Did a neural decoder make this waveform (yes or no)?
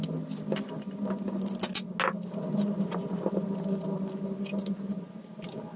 no